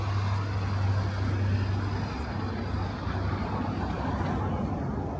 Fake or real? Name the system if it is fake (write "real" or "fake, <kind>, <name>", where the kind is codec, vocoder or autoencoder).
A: real